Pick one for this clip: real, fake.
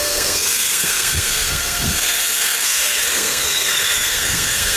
fake